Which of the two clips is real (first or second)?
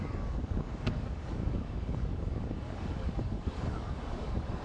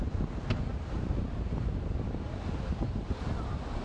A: second